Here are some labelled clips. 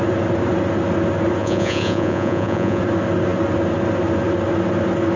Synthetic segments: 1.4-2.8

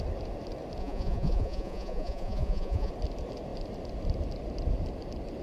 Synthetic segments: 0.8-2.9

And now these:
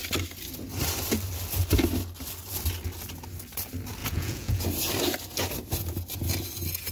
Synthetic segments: 4.0-4.6

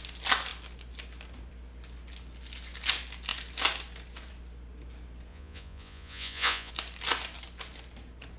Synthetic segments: 5.3-6.7

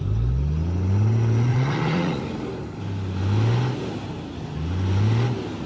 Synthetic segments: 1.5-2.2